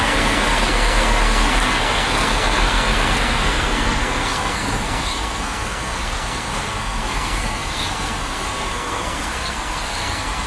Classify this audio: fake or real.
fake